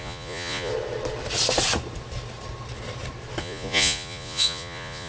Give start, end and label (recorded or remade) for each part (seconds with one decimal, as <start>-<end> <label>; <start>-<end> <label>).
0.0-0.7 remade; 0.7-3.4 recorded; 3.4-5.1 remade